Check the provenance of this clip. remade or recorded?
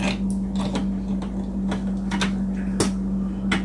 recorded